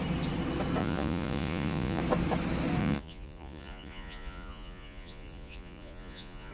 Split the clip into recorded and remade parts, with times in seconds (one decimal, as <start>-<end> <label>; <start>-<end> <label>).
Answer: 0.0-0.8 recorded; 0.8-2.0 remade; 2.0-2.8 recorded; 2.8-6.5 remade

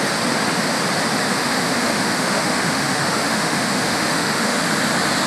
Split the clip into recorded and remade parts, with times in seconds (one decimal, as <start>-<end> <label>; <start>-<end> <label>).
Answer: 0.0-1.4 recorded; 1.4-4.6 remade; 4.6-5.3 recorded

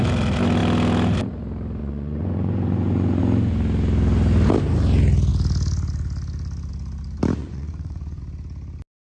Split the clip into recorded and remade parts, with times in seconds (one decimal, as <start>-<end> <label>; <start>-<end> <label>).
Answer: 0.0-1.8 recorded; 1.8-3.2 remade; 3.2-7.4 recorded; 7.4-8.2 remade; 8.2-9.2 recorded

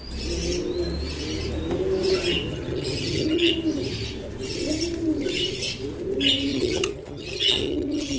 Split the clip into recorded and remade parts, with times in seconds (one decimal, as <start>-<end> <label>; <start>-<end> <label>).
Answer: 0.0-2.5 recorded; 2.5-3.5 remade; 3.5-6.5 recorded; 6.5-8.2 remade

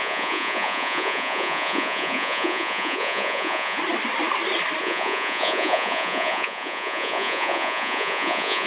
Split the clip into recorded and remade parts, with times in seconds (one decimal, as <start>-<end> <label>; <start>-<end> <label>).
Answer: 0.0-3.8 remade; 3.8-4.8 recorded; 4.8-8.7 remade

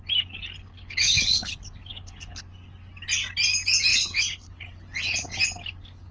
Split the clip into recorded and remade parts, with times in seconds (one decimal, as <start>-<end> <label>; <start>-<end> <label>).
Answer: 0.0-0.7 recorded; 0.7-1.5 remade; 1.5-1.9 recorded; 1.9-2.4 remade; 2.4-3.9 recorded; 3.9-4.6 remade; 4.6-6.1 recorded

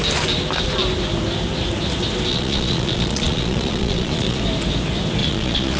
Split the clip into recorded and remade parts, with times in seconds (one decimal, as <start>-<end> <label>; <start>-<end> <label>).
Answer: 0.0-2.3 recorded; 2.3-4.4 remade; 4.4-5.2 recorded; 5.2-5.8 remade

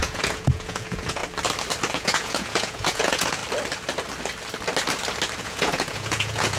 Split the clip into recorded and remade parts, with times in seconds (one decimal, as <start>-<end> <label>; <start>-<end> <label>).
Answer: 0.0-1.2 remade; 1.2-1.9 recorded; 1.9-3.4 remade; 3.4-5.4 recorded; 5.4-6.6 remade